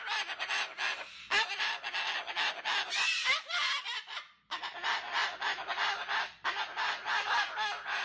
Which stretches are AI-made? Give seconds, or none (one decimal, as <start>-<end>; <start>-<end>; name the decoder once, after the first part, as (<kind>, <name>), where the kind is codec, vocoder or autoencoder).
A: none